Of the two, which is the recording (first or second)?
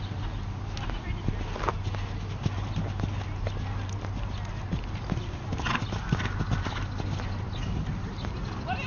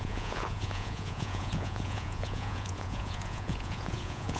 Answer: first